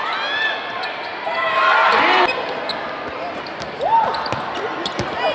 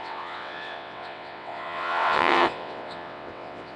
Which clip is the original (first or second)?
first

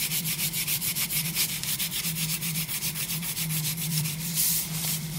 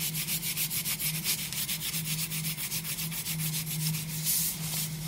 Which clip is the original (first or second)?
second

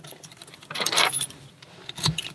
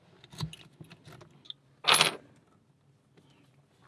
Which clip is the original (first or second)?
second